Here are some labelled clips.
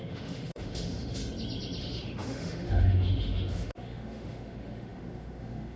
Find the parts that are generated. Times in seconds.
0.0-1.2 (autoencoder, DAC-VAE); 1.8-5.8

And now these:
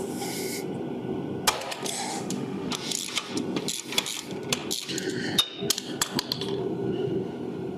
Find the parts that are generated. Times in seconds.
2.1-2.7 (autoencoder, DAC-VAE)

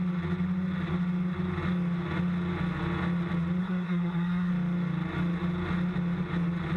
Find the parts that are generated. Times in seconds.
3.6-4.5 (codec, SNAC)

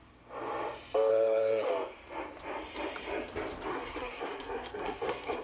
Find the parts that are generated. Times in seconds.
1.1-1.7 (codec, SNAC); 3.7-5.4

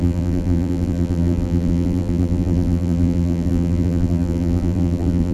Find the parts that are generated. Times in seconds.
0.0-5.3 (vocoder, BigVGAN v2)

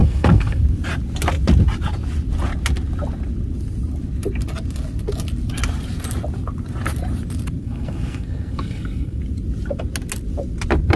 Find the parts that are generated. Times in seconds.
0.0-0.6 (codec, SNAC); 7.6-9.2